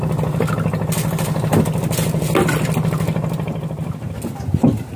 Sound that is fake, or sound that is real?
real